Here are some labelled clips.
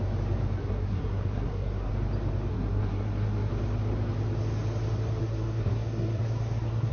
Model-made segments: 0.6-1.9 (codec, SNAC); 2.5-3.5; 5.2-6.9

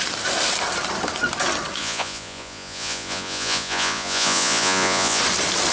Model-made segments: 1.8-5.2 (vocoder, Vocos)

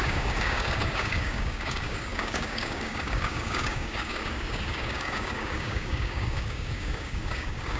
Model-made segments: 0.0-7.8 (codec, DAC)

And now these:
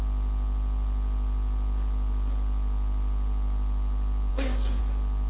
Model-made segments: 4.3-4.8 (codec, DAC)